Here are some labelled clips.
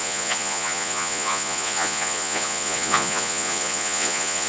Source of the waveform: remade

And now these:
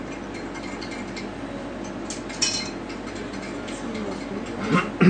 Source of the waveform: recorded